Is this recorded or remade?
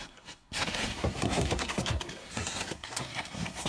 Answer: remade